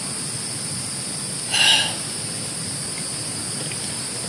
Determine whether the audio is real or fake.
real